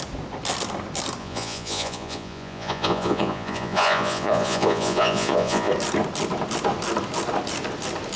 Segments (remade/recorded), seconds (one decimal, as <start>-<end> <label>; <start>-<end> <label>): 0.0-1.2 recorded; 1.2-5.7 remade; 5.7-8.2 recorded